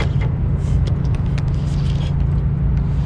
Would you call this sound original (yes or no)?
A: yes